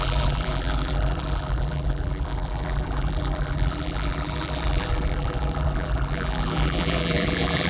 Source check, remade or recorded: remade